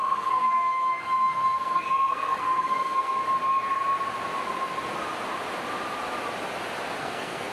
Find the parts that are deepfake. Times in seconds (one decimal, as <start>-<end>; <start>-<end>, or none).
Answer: 0.0-3.2; 7.0-7.5